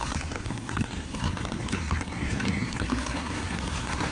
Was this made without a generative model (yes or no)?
no